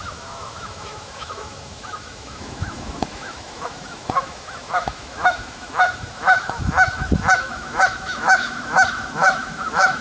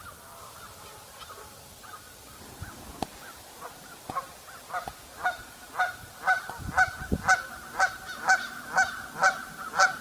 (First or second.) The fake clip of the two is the first